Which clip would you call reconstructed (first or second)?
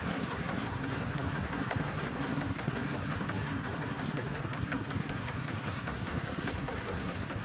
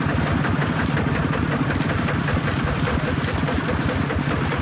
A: first